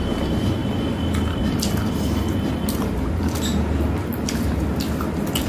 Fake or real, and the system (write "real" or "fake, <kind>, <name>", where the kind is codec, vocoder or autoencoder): real